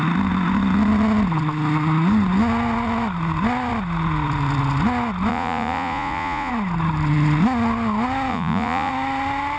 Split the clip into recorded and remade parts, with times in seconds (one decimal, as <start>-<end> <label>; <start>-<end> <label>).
0.0-5.3 recorded; 5.3-6.5 remade; 6.5-8.3 recorded; 8.3-8.9 remade; 8.9-9.6 recorded